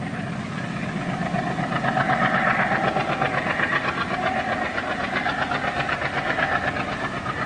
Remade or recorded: recorded